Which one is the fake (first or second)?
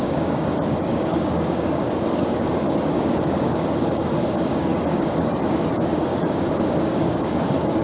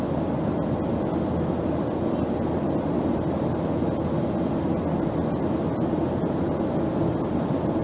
first